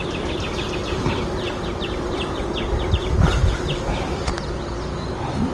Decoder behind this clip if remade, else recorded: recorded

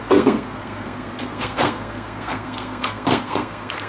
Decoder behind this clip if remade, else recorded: remade, codec, SNAC